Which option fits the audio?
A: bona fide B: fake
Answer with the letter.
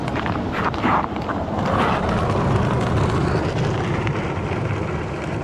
A